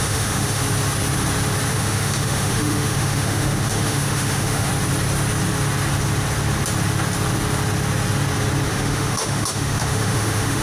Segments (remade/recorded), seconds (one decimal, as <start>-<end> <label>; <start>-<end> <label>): 0.0-0.6 remade; 0.6-1.7 recorded; 1.7-4.7 remade; 4.7-8.7 recorded; 8.7-10.6 remade